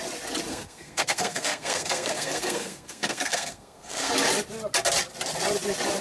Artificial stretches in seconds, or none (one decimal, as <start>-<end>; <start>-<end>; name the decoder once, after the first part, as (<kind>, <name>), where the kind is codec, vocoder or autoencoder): 0.5-4.1 (codec, SNAC)